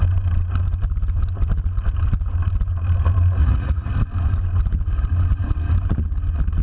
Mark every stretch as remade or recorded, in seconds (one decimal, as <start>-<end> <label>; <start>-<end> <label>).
0.0-3.4 recorded; 3.4-3.9 remade; 3.9-6.6 recorded